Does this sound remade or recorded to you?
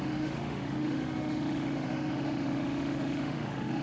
remade